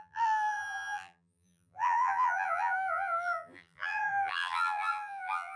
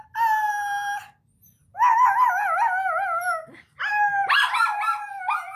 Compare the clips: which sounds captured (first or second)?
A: second